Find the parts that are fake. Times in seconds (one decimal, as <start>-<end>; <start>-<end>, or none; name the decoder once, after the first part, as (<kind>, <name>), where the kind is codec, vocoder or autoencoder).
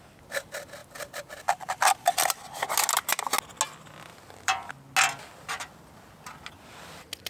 0.8-2.4 (vocoder, BigVGAN v2); 4.1-4.7